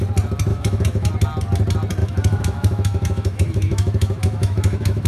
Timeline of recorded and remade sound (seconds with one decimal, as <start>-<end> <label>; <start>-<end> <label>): 0.0-0.5 recorded; 0.5-1.1 remade; 1.1-2.0 recorded; 2.0-5.1 remade